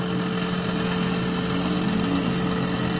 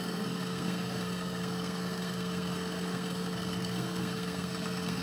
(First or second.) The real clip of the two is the first